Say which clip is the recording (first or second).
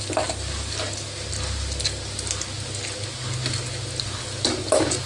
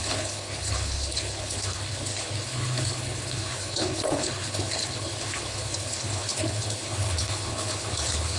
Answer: first